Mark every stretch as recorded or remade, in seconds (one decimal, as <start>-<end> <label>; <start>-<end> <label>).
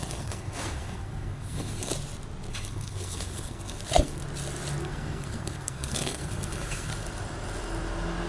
0.0-1.9 remade; 1.9-2.5 recorded; 2.5-4.2 remade; 4.2-4.8 recorded; 4.8-6.9 remade; 6.9-8.3 recorded